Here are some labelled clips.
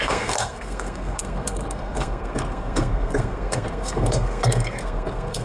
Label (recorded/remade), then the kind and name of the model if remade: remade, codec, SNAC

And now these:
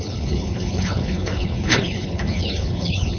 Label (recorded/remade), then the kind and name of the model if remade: remade, codec, HILCodec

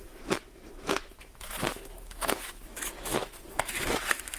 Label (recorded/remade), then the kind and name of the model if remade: remade, autoencoder, DAC-VAE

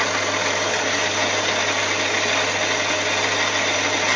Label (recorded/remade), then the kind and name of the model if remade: recorded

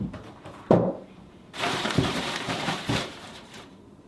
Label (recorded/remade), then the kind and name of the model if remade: remade, vocoder, BigVGAN v2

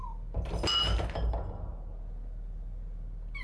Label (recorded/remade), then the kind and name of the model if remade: recorded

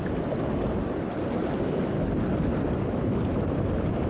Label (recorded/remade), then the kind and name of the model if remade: recorded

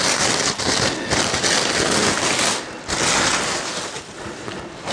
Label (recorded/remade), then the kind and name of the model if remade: recorded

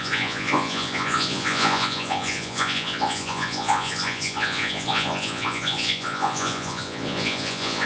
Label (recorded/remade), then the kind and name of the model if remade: remade, vocoder, Vocos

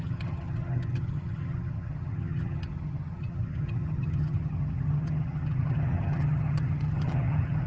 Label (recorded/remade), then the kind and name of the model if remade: remade, vocoder, HiFi-GAN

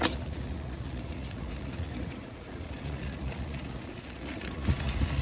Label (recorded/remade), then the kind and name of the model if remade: remade, vocoder, Vocos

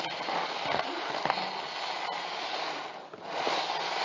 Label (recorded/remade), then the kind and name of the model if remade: recorded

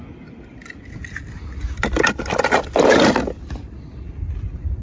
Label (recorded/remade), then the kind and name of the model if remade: recorded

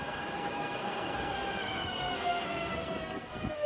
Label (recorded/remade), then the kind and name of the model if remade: remade, codec, SNAC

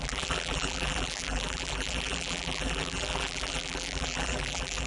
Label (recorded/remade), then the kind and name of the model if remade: remade, vocoder, BigVGAN v2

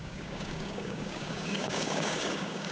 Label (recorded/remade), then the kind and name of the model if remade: remade, codec, DAC